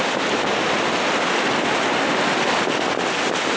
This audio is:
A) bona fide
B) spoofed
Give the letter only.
A